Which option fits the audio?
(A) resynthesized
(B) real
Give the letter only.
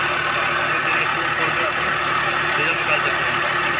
B